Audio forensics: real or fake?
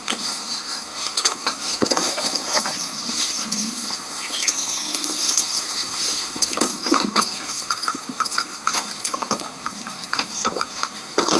fake